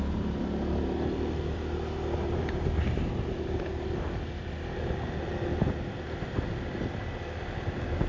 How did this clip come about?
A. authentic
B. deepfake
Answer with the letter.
A